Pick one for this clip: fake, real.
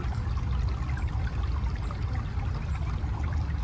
real